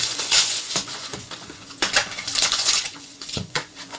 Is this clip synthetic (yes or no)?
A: yes